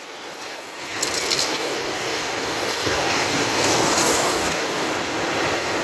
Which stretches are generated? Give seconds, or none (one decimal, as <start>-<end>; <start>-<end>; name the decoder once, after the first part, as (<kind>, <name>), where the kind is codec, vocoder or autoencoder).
1.4-4.9 (codec, DAC)